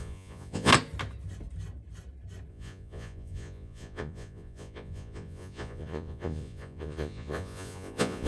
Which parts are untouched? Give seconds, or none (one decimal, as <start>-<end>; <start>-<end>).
0.7-2.5